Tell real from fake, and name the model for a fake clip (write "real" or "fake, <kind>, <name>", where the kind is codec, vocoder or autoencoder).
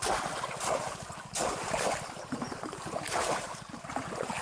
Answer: real